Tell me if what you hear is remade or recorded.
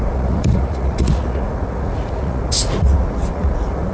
remade